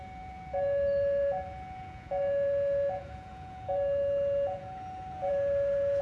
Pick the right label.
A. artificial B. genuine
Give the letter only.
A